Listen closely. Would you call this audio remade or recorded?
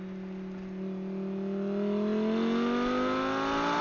recorded